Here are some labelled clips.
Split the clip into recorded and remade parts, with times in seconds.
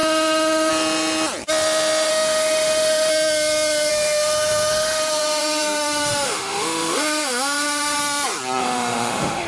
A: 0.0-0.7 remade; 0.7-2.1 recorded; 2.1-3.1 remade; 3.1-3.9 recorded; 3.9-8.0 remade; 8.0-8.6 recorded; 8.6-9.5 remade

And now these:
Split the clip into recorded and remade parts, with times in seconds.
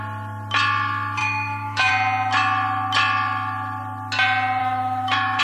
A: 0.0-1.2 recorded; 1.2-1.9 remade; 1.9-4.6 recorded; 4.6-5.4 remade